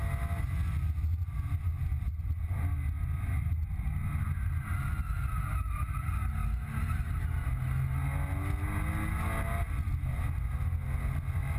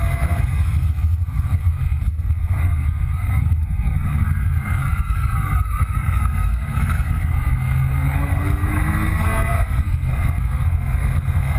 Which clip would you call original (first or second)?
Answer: first